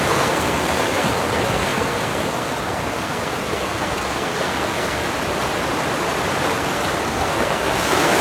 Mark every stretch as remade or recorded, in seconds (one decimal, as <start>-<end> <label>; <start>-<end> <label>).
0.0-5.0 remade; 5.0-6.5 recorded; 6.5-8.2 remade